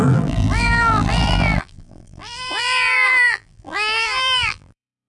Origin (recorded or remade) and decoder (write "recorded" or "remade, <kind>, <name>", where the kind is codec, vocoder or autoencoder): remade, vocoder, BigVGAN v2